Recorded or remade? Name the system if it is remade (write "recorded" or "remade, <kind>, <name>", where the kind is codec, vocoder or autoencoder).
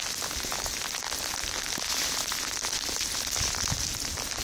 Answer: recorded